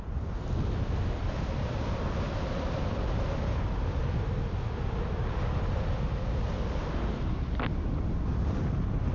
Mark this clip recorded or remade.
recorded